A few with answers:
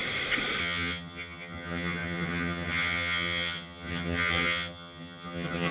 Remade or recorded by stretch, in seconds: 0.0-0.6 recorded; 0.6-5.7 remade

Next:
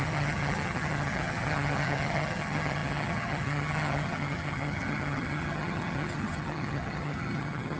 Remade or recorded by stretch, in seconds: 0.0-7.8 remade

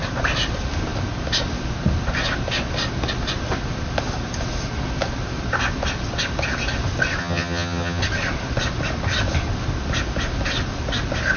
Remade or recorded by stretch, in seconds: 0.0-7.2 recorded; 7.2-8.0 remade; 8.0-11.4 recorded

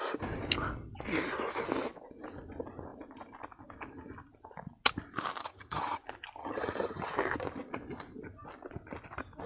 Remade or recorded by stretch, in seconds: 0.0-5.4 recorded; 5.4-6.0 remade; 6.0-6.4 recorded; 6.4-7.1 remade; 7.1-9.5 recorded

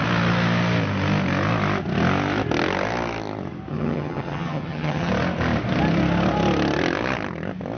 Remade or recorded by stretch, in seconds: 0.0-3.7 recorded; 3.7-5.1 remade; 5.1-7.8 recorded

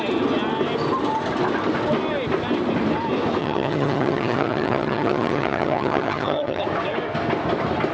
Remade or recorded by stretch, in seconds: 0.0-3.4 recorded; 3.4-6.6 remade; 6.6-7.9 recorded